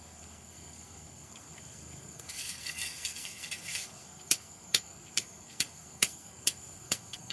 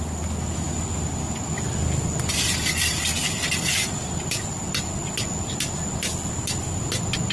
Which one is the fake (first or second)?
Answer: first